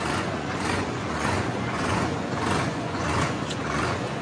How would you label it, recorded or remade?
remade